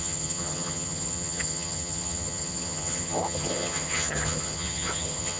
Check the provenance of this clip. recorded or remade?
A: remade